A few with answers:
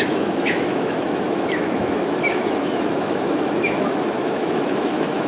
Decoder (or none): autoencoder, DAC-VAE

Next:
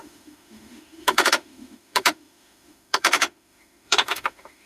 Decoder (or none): autoencoder, DAC-VAE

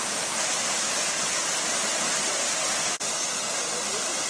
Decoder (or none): none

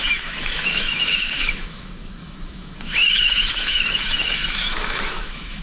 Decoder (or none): autoencoder, DAC-VAE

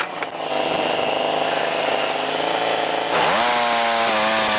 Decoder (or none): none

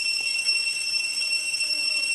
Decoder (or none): autoencoder, DAC-VAE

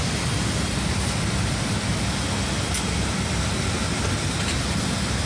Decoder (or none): none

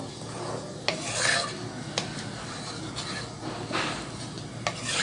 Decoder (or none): none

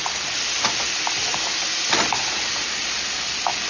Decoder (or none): none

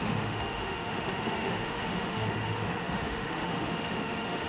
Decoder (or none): autoencoder, DAC-VAE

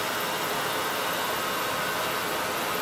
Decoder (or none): none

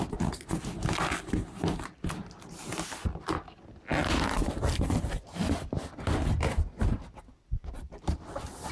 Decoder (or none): none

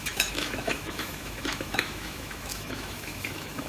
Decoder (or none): autoencoder, DAC-VAE